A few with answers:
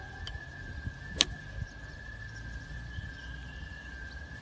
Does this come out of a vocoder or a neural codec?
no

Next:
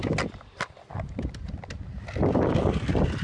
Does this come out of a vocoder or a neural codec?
no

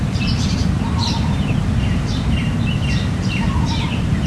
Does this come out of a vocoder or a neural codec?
yes